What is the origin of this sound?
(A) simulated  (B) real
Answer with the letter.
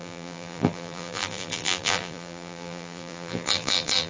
A